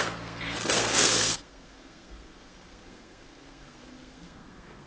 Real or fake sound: fake